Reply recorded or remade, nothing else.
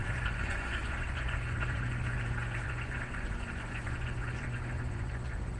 remade